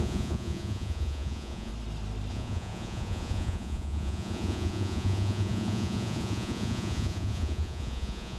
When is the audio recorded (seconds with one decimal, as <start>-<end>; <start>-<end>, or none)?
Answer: 1.7-2.3

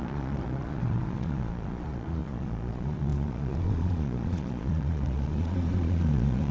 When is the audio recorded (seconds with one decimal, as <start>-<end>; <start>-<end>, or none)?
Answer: none

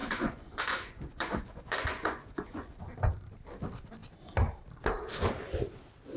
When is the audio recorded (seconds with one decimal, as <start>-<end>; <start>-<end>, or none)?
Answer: 2.8-6.2

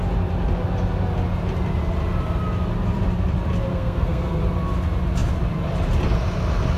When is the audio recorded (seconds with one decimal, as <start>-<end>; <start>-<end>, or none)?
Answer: 0.0-3.7; 4.4-6.8

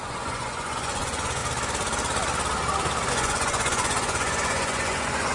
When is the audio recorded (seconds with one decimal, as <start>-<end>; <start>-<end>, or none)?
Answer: 1.4-3.1

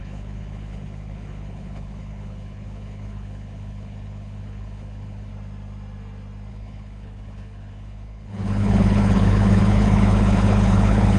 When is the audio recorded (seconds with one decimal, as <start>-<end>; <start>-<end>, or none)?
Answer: 5.3-6.5

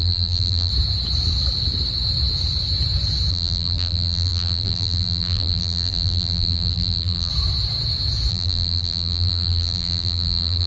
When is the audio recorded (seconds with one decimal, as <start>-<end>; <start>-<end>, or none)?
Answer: 0.7-3.3; 7.3-8.3